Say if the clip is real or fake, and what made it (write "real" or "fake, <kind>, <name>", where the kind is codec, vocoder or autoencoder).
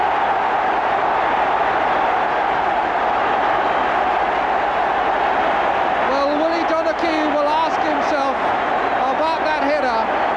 real